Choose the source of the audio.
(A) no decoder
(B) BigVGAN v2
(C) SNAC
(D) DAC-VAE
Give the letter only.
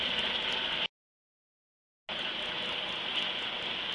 A